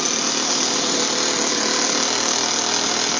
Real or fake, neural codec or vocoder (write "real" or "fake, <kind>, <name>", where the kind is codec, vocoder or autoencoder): fake, vocoder, BigVGAN v2